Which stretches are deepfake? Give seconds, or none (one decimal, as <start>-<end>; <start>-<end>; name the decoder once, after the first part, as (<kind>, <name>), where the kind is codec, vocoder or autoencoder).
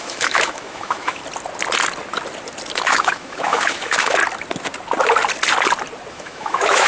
0.0-1.2 (autoencoder, DAC-VAE); 2.8-4.2; 6.1-6.9